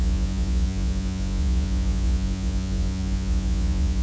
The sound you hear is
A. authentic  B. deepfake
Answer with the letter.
B